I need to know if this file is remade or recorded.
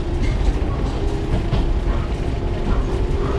recorded